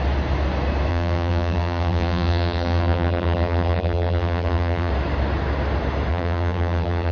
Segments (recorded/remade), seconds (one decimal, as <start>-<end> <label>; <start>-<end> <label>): 0.0-0.9 recorded; 0.9-4.9 remade; 4.9-6.1 recorded; 6.1-7.1 remade